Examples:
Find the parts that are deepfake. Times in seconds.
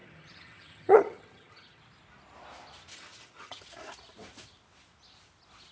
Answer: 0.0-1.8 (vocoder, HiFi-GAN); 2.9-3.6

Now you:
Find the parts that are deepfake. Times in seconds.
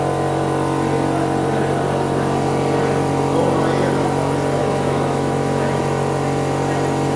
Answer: 4.6-5.8 (autoencoder, DAC-VAE)